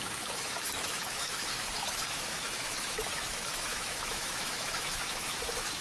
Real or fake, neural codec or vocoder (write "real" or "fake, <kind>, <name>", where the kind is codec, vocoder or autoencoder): fake, autoencoder, DAC-VAE